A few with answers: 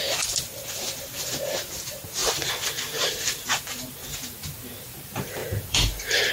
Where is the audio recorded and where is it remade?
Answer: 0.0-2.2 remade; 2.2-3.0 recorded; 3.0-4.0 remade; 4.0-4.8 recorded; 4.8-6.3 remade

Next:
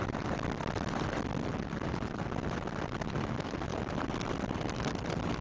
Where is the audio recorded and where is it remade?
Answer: 0.0-5.4 recorded

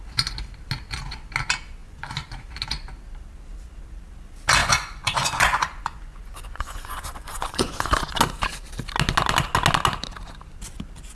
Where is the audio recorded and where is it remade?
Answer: 0.0-1.8 recorded; 1.8-2.5 remade; 2.5-4.6 recorded; 4.6-7.9 remade; 7.9-11.1 recorded